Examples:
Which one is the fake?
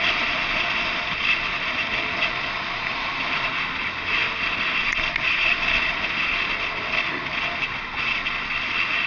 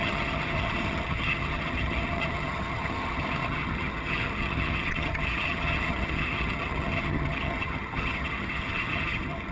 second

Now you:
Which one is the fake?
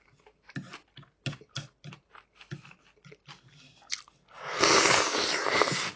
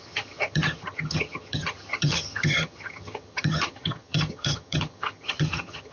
second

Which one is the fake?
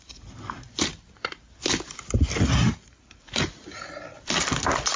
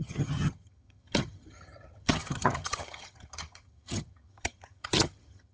second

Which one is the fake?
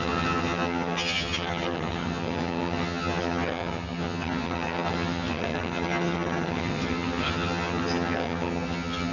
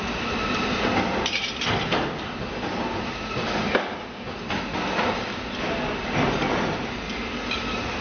first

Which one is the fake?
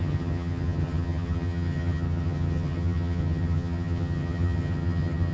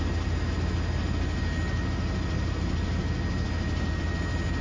first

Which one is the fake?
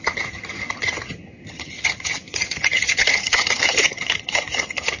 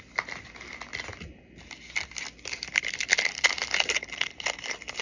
first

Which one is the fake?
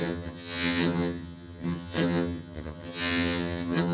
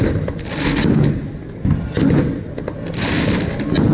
first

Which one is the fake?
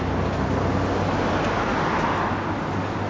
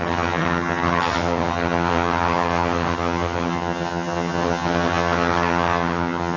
second